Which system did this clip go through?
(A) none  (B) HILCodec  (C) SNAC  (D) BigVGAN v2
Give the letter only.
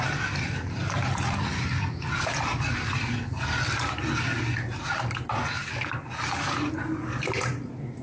A